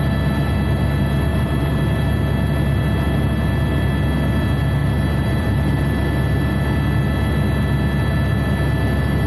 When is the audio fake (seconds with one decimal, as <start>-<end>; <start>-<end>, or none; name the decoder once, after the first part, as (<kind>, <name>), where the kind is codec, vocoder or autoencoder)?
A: 1.3-1.8 (vocoder, BigVGAN v2); 4.8-5.8